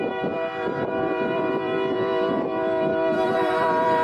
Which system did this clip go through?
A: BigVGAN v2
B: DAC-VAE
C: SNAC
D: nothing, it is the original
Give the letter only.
A